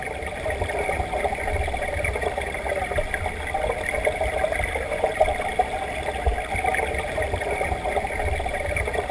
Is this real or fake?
real